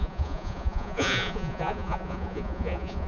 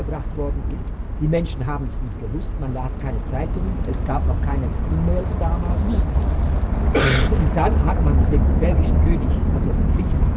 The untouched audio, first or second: second